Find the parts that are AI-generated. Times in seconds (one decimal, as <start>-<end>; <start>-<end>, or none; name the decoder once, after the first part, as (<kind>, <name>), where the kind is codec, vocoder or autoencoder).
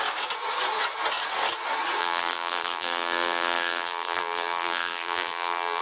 2.0-5.8 (vocoder, BigVGAN v2)